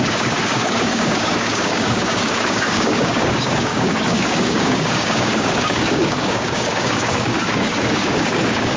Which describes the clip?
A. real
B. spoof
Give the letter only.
B